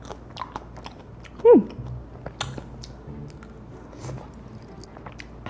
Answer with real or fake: real